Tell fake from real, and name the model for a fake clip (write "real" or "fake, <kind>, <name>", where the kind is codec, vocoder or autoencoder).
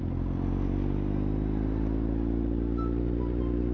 real